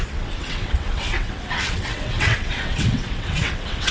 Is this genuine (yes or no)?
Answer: no